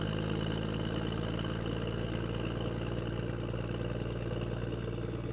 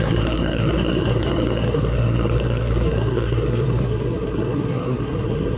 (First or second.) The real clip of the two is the first